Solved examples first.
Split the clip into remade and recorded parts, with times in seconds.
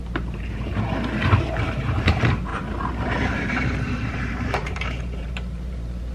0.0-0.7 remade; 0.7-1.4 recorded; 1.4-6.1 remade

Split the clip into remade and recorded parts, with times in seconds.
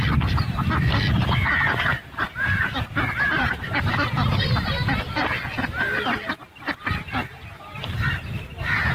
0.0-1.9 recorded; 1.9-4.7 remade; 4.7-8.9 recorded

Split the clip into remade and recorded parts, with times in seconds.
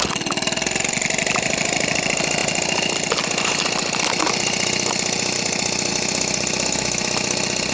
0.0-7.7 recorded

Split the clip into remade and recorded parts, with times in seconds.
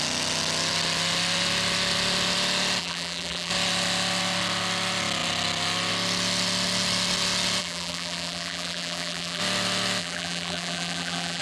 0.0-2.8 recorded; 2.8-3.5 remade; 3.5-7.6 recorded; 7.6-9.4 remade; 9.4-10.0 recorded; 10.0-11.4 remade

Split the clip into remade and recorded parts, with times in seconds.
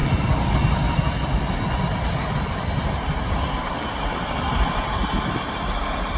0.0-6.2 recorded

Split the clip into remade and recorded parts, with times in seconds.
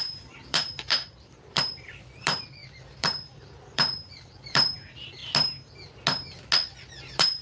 0.0-5.2 remade; 5.2-6.7 recorded; 6.7-7.4 remade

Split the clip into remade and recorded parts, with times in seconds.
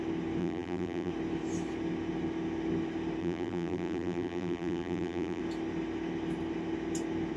0.0-0.4 recorded; 0.4-1.1 remade; 1.1-3.2 recorded; 3.2-5.4 remade; 5.4-7.4 recorded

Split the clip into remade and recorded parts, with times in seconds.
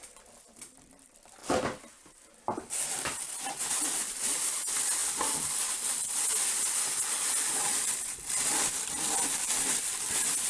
0.0-1.4 remade; 1.4-3.7 recorded; 3.7-5.0 remade; 5.0-7.8 recorded; 7.8-10.5 remade